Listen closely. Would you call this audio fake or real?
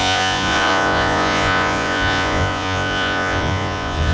fake